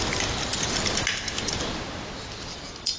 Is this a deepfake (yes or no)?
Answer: no